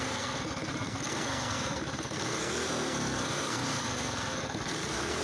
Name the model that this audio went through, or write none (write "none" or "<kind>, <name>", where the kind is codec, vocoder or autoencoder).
codec, SNAC